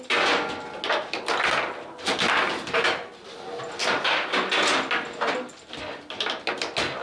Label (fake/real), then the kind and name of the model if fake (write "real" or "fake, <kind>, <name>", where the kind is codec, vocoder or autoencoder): real